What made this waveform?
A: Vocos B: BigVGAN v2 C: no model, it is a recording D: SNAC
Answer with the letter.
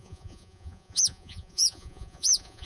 A